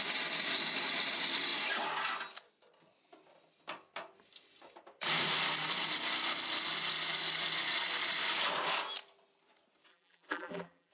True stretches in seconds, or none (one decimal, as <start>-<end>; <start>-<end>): 0.0-9.9